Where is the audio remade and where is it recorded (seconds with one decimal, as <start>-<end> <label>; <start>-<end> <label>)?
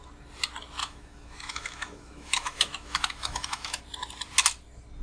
0.0-0.8 recorded; 0.8-3.8 remade; 3.8-5.0 recorded